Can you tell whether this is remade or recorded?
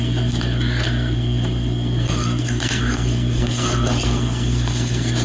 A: remade